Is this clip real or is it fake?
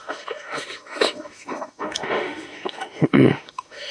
fake